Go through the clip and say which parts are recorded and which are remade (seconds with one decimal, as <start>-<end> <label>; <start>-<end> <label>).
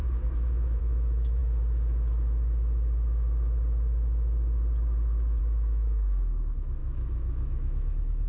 0.0-1.4 remade; 1.4-5.4 recorded; 5.4-8.3 remade